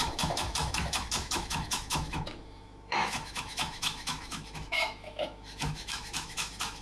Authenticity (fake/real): fake